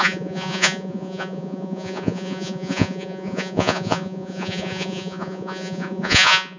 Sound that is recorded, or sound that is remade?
remade